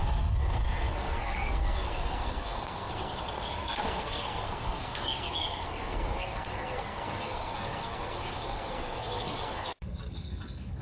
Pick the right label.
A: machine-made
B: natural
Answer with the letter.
A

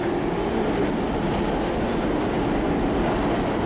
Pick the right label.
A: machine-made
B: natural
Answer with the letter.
B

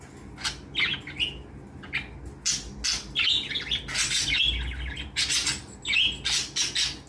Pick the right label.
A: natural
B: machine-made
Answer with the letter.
A